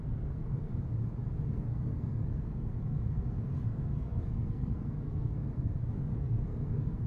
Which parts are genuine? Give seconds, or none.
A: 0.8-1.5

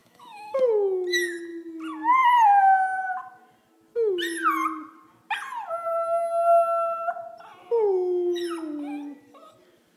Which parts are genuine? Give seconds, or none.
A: 0.6-10.0

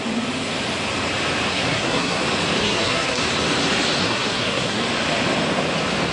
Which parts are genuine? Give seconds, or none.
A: 0.0-1.5; 2.2-2.6; 3.2-4.0; 4.8-6.1

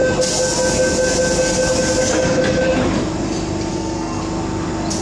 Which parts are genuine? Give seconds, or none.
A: 0.0-3.7; 4.2-5.0

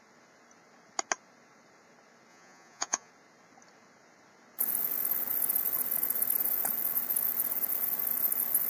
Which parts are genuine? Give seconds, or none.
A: 0.0-2.3; 3.1-8.7

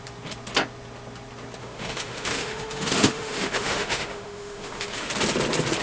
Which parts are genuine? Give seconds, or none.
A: 0.0-1.6; 5.1-5.8

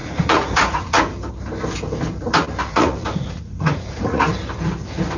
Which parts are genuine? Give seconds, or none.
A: 1.0-2.7; 4.3-5.2

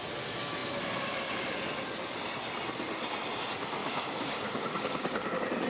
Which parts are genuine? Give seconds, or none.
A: 0.0-3.8; 5.3-5.7